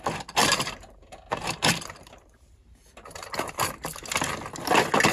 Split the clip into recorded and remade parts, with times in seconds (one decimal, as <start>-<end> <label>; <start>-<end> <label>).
0.0-0.4 recorded; 0.4-3.5 remade; 3.5-5.1 recorded